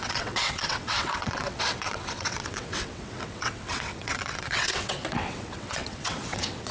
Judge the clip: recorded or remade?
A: remade